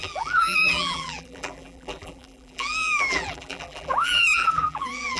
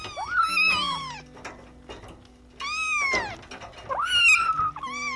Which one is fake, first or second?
first